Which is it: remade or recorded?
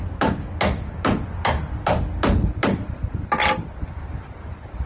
recorded